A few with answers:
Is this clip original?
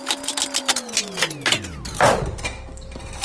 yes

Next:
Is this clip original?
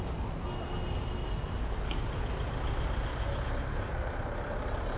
yes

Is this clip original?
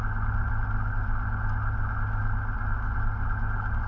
yes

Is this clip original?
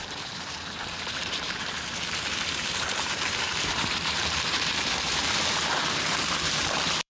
no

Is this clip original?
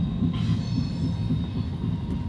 yes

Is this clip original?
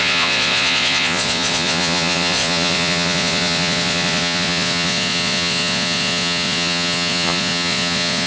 no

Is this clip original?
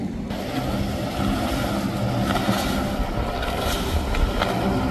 yes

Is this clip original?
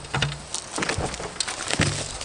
yes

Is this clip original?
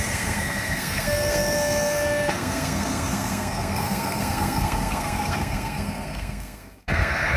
no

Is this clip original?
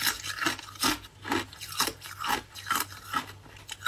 yes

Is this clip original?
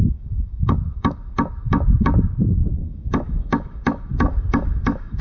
no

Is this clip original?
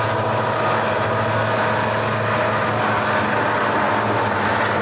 yes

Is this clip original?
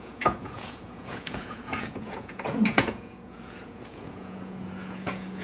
no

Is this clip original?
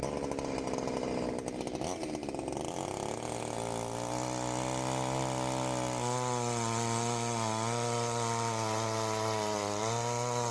yes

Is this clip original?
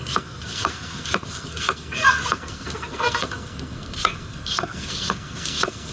no